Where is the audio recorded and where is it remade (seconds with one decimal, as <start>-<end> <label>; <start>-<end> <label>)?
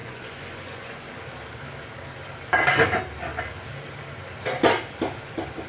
0.0-1.1 remade; 1.1-5.7 recorded